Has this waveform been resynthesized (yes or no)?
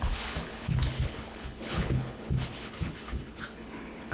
yes